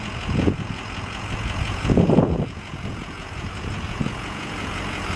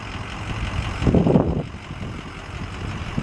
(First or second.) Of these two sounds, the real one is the second